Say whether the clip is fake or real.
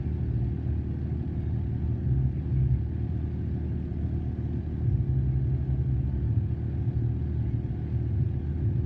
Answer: real